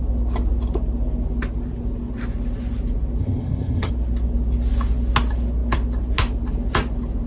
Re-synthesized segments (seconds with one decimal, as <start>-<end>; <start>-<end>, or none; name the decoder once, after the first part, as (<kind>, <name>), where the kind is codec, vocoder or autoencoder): 3.2-3.9 (vocoder, HiFi-GAN)